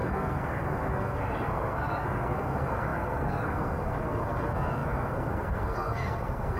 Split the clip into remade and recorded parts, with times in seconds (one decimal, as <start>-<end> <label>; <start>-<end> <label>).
0.0-6.6 remade